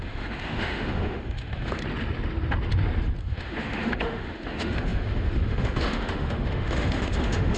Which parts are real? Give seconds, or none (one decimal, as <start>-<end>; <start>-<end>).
1.8-3.2